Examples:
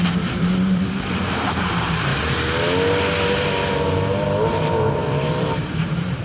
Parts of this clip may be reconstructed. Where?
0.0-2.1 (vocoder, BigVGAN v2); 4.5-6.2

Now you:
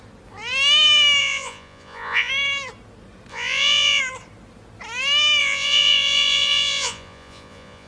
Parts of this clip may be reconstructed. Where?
1.2-2.3 (vocoder, Vocos); 3.3-4.0; 5.4-7.9

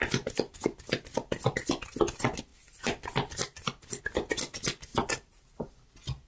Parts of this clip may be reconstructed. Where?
4.9-5.7 (vocoder, BigVGAN v2)

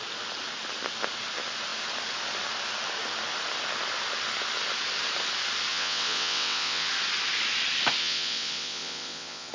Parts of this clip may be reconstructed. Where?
5.7-6.9 (vocoder, WaveNeXt); 8.0-9.5

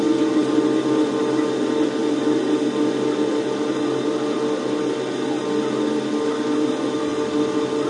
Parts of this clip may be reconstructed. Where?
none